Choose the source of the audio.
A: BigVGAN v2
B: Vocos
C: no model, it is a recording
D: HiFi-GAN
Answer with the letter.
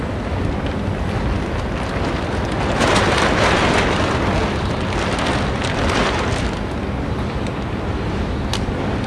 C